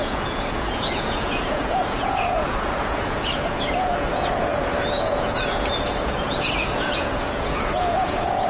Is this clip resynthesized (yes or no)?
yes